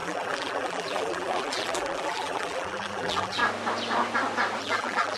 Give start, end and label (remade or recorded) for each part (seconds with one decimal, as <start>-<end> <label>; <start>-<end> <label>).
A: 0.0-3.4 remade; 3.4-4.6 recorded; 4.6-5.2 remade